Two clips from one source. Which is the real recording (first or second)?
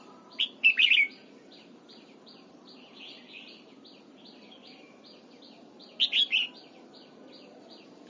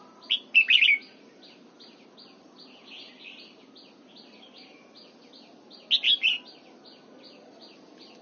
second